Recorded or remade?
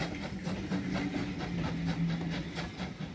recorded